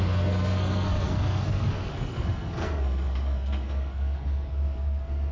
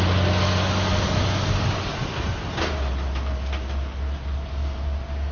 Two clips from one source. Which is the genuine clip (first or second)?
second